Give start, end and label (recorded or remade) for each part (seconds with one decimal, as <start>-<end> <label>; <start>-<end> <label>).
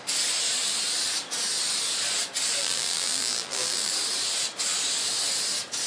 0.0-2.6 recorded; 2.6-3.9 remade; 3.9-5.9 recorded